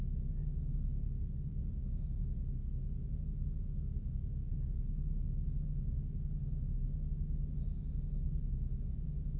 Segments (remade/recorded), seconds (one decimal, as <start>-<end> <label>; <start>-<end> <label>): 0.0-9.4 recorded